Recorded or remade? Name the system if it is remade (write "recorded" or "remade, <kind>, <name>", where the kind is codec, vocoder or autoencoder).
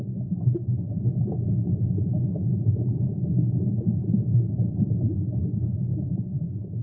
recorded